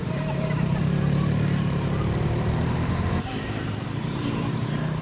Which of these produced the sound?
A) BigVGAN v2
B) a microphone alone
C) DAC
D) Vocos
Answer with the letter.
A